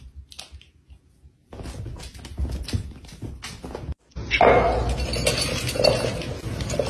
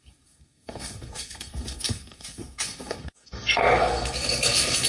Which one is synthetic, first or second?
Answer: second